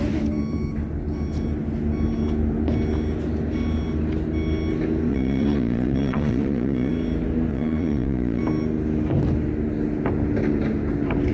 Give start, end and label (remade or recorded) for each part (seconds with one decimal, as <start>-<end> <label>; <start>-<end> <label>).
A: 0.0-5.1 recorded; 5.1-6.9 remade; 6.9-7.5 recorded; 7.5-8.4 remade; 8.4-11.3 recorded

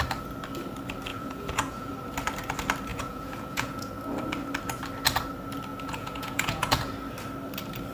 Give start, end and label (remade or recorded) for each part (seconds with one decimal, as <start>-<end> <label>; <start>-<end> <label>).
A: 0.0-1.1 recorded; 1.1-1.9 remade; 1.9-2.9 recorded; 2.9-3.9 remade; 3.9-5.7 recorded; 5.7-6.9 remade; 6.9-7.9 recorded

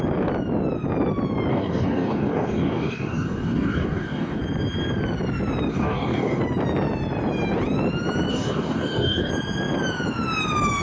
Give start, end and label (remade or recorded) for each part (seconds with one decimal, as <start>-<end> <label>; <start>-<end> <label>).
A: 0.0-1.5 recorded; 1.5-4.4 remade; 4.4-5.7 recorded; 5.7-6.4 remade; 6.4-8.3 recorded; 8.3-9.3 remade; 9.3-10.8 recorded

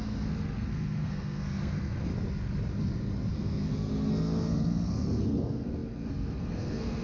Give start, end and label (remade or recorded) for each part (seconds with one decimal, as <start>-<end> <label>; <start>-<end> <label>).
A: 0.0-2.1 remade; 2.1-3.3 recorded; 3.3-7.0 remade

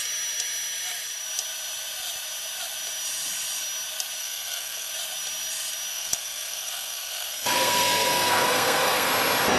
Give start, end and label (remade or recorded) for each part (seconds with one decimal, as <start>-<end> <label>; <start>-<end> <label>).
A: 0.0-4.2 recorded; 4.2-4.9 remade; 4.9-5.9 recorded; 5.9-9.1 remade; 9.1-9.6 recorded

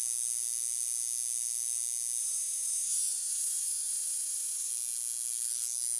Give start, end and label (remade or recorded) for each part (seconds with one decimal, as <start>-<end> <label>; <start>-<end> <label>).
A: 0.0-2.2 recorded; 2.2-4.7 remade; 4.7-6.0 recorded